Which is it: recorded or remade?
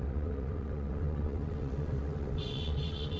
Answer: remade